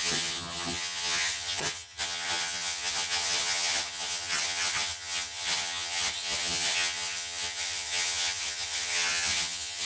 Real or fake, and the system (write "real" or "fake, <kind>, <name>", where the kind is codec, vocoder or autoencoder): fake, vocoder, HiFi-GAN